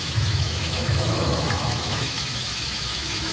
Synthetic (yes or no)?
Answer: yes